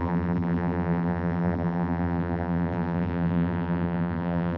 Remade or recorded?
remade